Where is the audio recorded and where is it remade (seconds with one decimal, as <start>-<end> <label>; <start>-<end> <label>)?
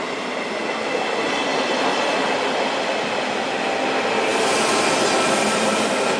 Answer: 0.0-6.2 recorded